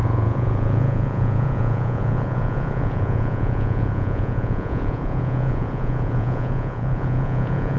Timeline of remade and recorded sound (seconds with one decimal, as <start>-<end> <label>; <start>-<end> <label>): 0.0-7.8 remade